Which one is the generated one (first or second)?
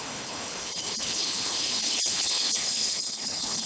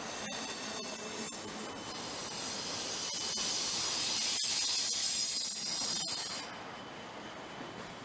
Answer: first